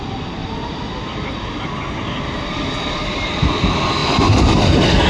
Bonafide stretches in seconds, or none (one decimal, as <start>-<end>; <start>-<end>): 0.0-0.4; 3.5-5.1